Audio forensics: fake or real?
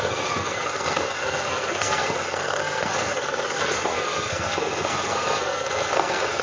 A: fake